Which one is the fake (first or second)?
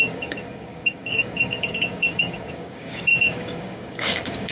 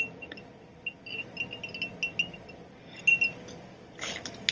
first